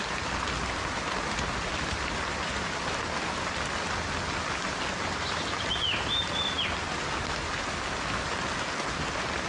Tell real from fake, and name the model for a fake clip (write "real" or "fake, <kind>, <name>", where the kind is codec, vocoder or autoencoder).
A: real